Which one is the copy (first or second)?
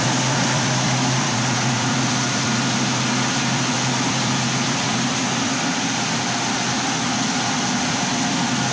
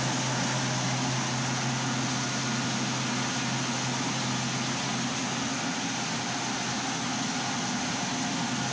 first